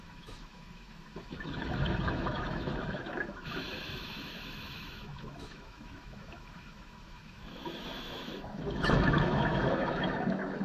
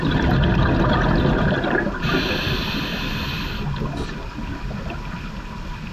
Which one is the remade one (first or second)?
first